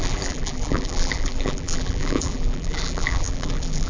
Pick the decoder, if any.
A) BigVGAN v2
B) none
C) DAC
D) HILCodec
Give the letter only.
A